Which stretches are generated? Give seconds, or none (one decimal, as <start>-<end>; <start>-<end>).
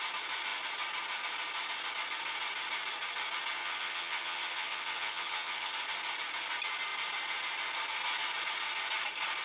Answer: 3.6-5.7